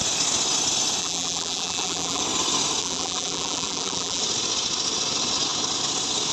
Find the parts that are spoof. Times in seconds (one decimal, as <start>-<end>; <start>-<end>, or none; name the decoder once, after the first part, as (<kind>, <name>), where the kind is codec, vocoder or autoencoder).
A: 1.0-2.2 (vocoder, BigVGAN v2); 2.8-4.2